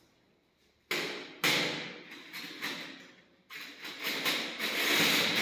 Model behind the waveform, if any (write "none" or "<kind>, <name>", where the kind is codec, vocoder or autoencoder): none